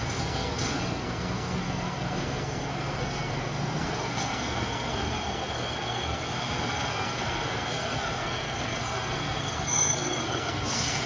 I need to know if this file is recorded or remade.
remade